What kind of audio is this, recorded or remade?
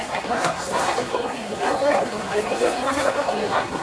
remade